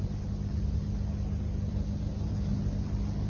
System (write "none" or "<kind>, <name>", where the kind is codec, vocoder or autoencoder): none